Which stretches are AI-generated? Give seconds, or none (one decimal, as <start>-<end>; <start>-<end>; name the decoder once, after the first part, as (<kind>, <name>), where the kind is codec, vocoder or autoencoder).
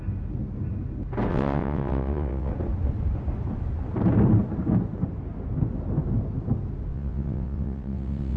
1.3-2.5 (vocoder, WaveNeXt); 6.9-8.4